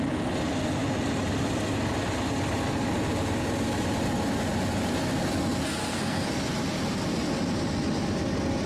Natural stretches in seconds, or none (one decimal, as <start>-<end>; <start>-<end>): 0.0-5.8; 6.3-8.7